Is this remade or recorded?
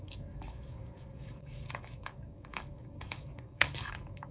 remade